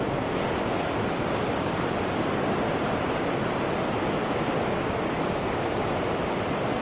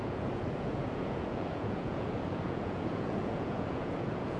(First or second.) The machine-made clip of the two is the second